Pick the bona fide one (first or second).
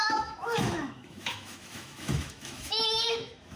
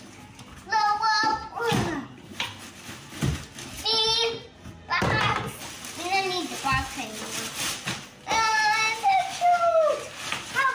second